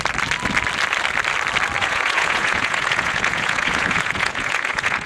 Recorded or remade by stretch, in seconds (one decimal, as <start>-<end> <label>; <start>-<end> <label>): 0.0-1.8 recorded; 1.8-5.1 remade